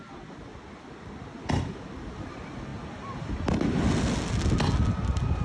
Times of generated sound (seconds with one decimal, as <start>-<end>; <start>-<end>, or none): none